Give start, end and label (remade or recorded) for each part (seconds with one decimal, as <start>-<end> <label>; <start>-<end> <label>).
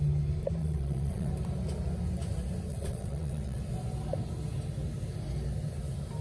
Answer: 0.0-0.6 recorded; 0.6-1.3 remade; 1.3-2.7 recorded; 2.7-3.6 remade; 3.6-6.2 recorded